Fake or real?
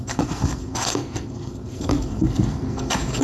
fake